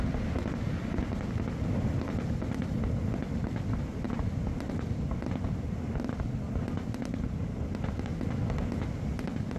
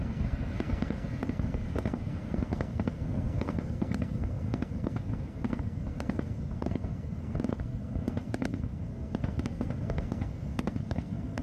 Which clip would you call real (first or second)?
first